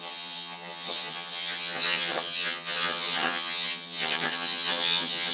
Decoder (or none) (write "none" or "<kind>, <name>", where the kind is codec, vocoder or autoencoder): vocoder, HiFi-GAN